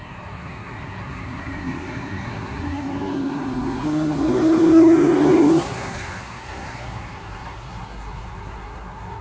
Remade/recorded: remade